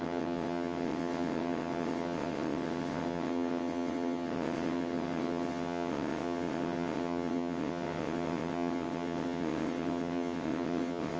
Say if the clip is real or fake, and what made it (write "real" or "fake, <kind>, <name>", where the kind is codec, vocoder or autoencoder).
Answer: fake, vocoder, WaveNeXt